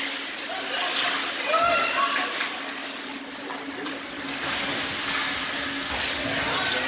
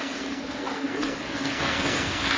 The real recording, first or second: first